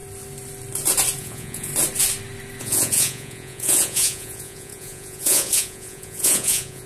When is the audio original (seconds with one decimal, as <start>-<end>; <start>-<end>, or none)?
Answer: 0.0-1.2; 1.7-2.6